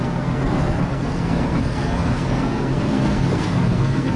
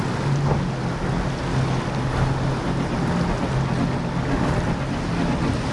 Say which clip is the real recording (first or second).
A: second